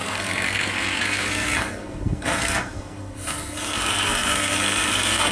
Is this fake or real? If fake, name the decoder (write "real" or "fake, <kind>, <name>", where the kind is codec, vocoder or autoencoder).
fake, codec, SNAC